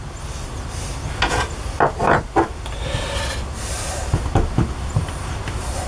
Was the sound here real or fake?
real